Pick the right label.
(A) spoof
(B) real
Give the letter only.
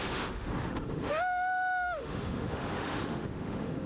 A